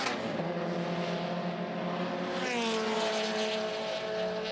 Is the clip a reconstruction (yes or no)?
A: no